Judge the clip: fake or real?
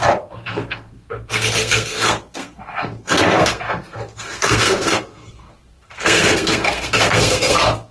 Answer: fake